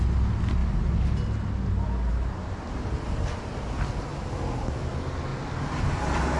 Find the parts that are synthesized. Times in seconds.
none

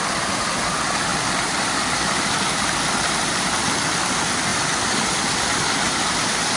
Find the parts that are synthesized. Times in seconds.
1.1-3.6 (vocoder, BigVGAN v2); 4.5-5.2

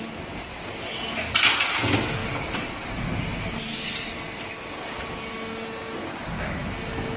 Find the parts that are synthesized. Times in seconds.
none